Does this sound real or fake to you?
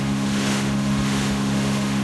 fake